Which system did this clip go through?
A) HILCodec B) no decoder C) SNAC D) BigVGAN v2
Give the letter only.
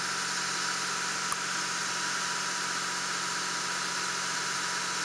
B